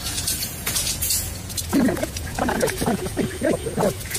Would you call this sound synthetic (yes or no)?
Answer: yes